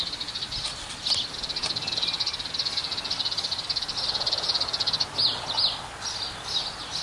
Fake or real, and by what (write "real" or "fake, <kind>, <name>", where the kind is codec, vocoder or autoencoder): real